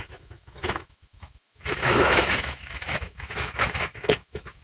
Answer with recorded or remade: remade